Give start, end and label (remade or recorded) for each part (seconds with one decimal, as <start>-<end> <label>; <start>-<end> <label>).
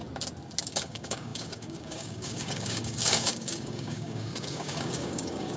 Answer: 0.0-0.6 recorded; 0.6-5.6 remade